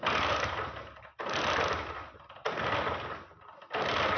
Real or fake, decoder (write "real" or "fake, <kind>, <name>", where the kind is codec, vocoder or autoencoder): real